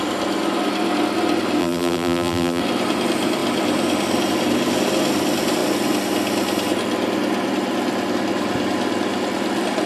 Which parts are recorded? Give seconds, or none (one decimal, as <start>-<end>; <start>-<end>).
0.0-1.6; 2.6-9.9